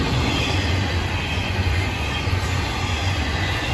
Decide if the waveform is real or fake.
fake